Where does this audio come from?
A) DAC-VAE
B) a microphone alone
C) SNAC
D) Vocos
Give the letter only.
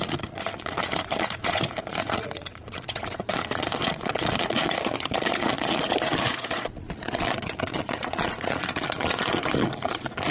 D